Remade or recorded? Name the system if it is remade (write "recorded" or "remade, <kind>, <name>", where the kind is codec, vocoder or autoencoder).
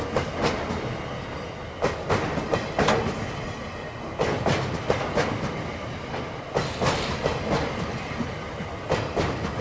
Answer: recorded